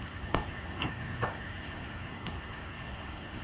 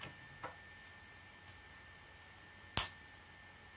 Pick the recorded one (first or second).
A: second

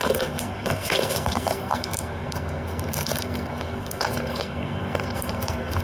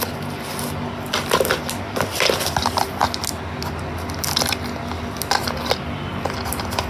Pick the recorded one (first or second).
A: second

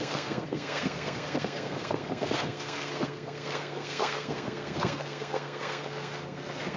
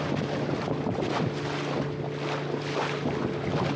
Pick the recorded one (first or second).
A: second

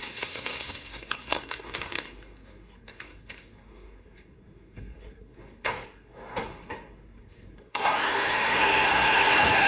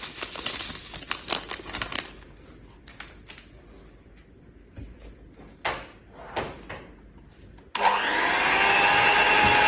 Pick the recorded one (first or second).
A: second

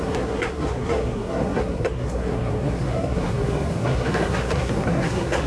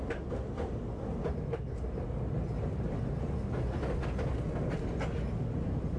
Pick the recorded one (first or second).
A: second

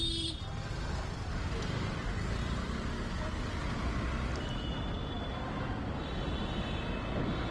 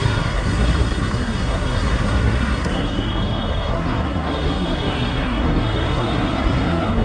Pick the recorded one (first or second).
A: first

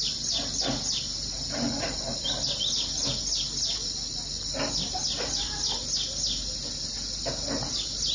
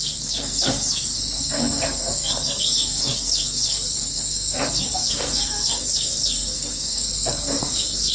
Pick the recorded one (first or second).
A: first